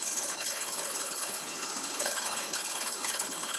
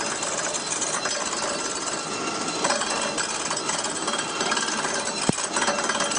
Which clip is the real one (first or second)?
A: second